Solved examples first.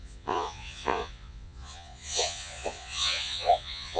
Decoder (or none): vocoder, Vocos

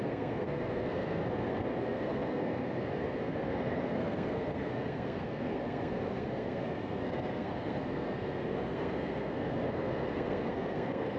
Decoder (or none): codec, SNAC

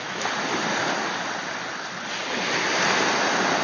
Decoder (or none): none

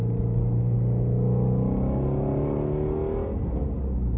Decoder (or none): none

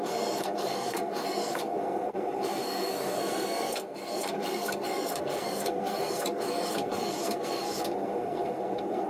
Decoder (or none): codec, SNAC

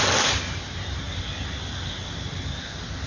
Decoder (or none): none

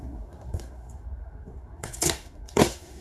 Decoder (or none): codec, SNAC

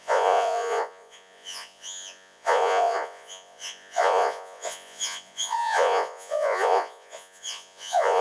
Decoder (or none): vocoder, Vocos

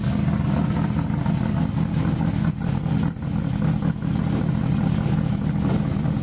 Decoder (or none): none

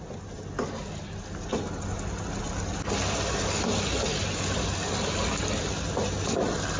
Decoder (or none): none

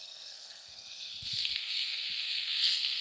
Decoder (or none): codec, SNAC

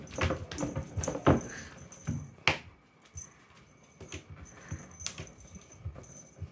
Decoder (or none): none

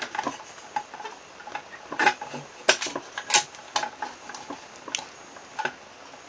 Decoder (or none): none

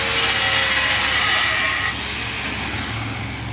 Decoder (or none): none